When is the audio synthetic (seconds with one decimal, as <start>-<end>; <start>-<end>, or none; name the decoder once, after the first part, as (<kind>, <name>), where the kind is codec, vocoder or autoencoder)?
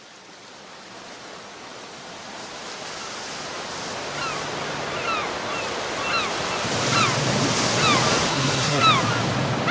8.3-8.8 (codec, SNAC)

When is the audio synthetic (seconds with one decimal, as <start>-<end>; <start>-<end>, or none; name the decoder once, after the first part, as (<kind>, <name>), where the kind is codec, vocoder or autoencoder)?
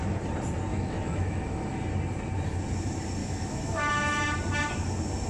0.7-1.8 (autoencoder, DAC-VAE); 3.2-3.9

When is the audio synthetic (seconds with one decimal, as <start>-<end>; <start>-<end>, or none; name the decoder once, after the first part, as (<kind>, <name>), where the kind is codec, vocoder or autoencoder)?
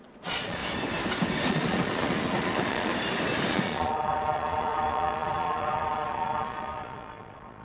0.0-0.6 (vocoder, Vocos); 1.5-2.9; 3.5-7.6